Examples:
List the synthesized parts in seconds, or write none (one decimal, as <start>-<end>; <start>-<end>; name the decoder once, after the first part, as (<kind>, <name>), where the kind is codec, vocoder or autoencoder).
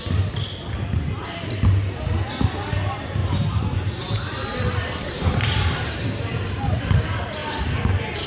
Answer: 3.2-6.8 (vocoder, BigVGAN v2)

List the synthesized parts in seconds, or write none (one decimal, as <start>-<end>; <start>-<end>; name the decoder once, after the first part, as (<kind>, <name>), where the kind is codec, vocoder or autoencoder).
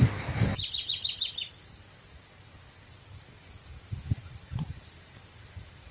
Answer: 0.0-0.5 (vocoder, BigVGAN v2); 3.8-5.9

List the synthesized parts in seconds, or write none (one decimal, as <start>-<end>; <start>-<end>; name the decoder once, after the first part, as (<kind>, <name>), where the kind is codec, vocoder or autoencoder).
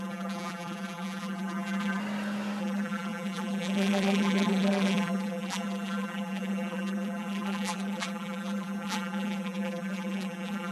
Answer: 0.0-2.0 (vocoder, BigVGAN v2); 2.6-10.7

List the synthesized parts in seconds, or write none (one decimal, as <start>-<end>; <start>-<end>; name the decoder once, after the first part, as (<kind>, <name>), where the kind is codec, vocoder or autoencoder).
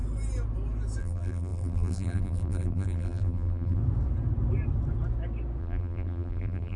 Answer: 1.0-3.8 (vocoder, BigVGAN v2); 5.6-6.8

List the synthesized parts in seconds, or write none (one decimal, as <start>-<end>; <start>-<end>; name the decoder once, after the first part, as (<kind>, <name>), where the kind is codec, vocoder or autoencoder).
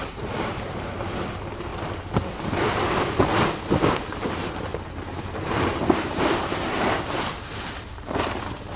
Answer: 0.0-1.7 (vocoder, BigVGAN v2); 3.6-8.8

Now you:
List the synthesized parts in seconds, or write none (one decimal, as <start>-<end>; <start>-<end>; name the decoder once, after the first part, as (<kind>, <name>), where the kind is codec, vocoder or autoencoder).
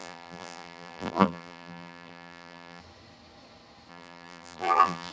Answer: 0.0-2.8 (vocoder, BigVGAN v2); 3.9-5.1